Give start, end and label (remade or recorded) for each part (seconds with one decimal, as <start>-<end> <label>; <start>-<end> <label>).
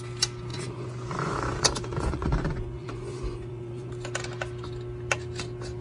0.0-0.5 recorded; 0.5-3.9 remade; 3.9-5.8 recorded